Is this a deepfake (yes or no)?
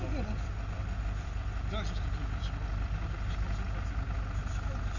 no